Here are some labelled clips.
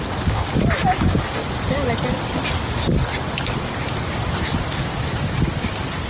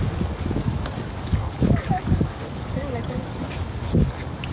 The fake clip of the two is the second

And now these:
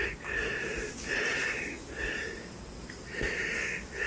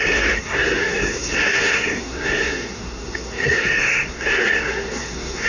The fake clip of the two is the second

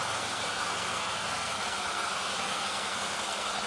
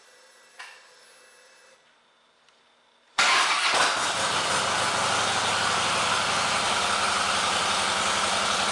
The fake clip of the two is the first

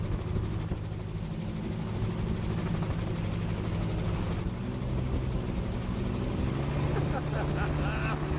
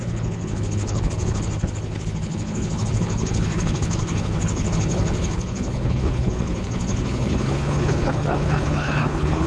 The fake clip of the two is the second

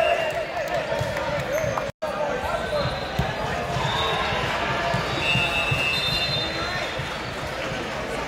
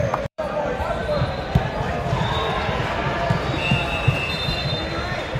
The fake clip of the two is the second